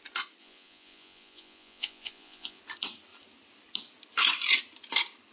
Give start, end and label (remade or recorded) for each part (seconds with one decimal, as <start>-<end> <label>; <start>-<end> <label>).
0.0-0.4 recorded; 0.4-2.6 remade; 2.6-5.3 recorded